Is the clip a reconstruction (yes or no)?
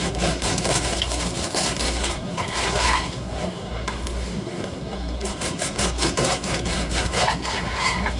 yes